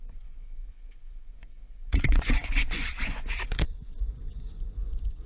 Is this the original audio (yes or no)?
no